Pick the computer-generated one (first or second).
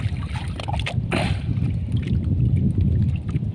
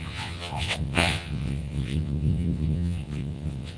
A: second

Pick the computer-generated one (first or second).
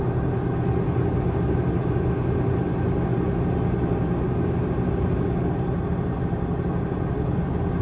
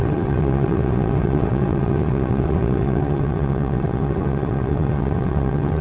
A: second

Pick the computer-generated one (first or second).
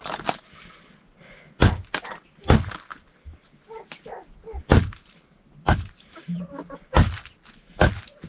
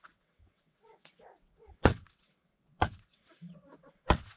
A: second